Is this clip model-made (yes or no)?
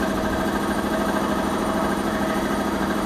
yes